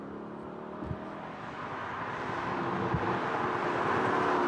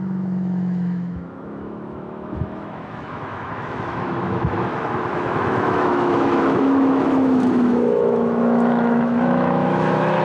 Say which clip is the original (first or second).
first